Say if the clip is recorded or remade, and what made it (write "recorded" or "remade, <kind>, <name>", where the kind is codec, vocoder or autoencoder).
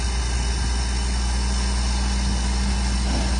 recorded